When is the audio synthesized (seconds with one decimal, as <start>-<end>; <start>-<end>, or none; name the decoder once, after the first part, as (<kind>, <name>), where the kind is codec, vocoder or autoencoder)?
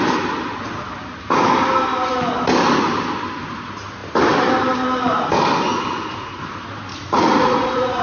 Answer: 5.7-6.4 (vocoder, Vocos); 6.9-8.0